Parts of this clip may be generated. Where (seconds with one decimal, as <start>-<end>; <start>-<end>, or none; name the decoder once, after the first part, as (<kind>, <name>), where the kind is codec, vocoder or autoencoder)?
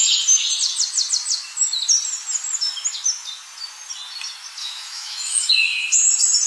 4.6-5.5 (autoencoder, DAC-VAE)